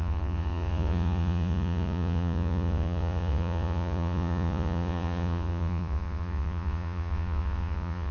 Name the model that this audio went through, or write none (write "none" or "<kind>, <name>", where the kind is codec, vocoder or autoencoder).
vocoder, Vocos